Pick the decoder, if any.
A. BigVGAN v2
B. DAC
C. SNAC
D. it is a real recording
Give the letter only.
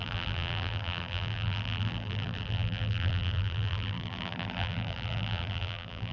A